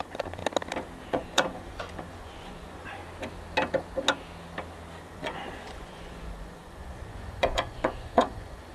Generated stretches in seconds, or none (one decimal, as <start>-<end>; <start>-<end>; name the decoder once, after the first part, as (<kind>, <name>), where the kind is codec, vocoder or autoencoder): 0.0-0.4 (vocoder, Vocos); 1.1-3.0; 5.0-8.7